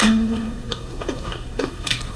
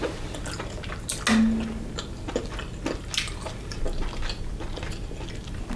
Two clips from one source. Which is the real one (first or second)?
second